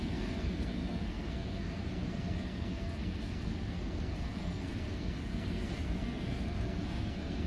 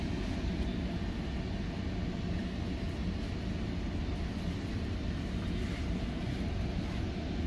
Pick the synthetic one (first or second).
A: first